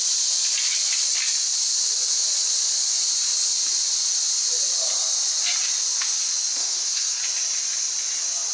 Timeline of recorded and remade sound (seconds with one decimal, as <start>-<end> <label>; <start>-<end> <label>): 0.0-6.6 recorded; 6.6-7.2 remade; 7.2-8.5 recorded